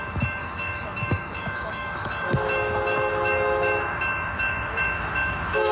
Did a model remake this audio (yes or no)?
yes